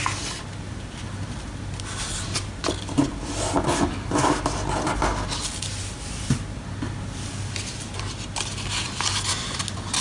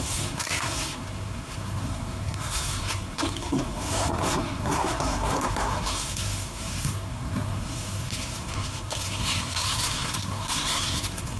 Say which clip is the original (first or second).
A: first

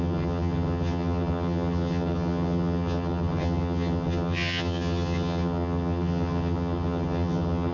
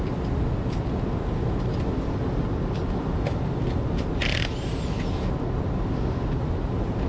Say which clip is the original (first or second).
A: second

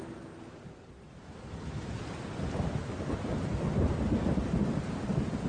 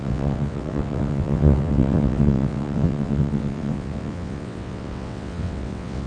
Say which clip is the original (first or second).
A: first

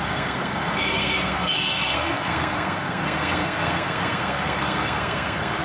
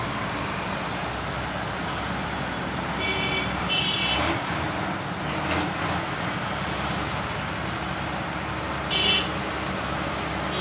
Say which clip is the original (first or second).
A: second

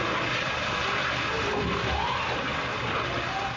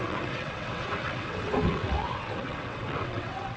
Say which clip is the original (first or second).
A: first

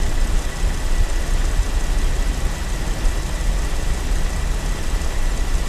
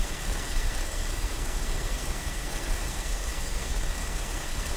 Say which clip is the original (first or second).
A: first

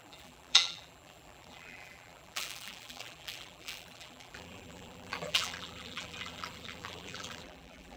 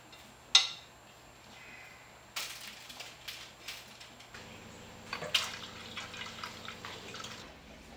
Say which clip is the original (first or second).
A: second